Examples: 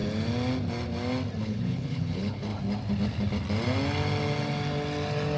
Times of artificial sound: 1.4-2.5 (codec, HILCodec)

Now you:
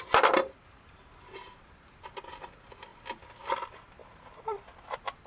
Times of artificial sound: none

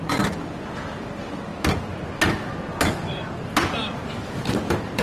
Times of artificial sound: 0.0-1.5 (vocoder, BigVGAN v2); 4.5-5.0

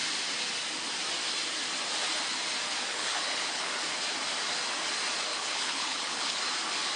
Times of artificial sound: 2.9-3.7 (codec, HILCodec); 5.3-6.4

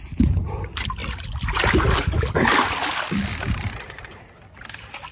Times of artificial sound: none